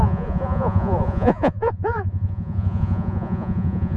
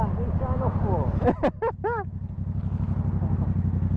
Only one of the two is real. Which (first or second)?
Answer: second